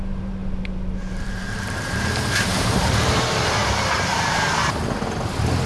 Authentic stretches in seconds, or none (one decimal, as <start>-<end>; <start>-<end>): 0.4-1.2; 3.6-4.1; 4.8-5.7